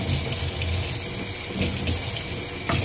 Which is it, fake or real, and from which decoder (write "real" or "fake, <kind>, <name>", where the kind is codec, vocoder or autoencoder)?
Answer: real